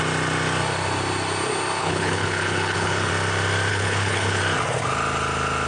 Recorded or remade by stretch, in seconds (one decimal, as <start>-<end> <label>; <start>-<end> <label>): 0.0-1.8 recorded; 1.8-3.1 remade; 3.1-3.7 recorded; 3.7-4.4 remade; 4.4-5.7 recorded